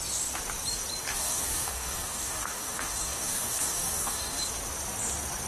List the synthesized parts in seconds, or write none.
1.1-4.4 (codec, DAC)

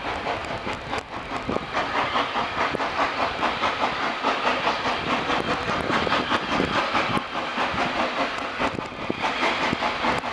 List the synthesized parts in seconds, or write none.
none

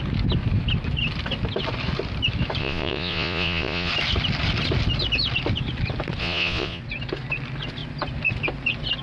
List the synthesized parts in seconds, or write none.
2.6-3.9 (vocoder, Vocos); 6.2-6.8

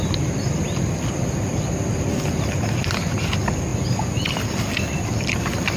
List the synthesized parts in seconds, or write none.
3.7-5.8 (vocoder, BigVGAN v2)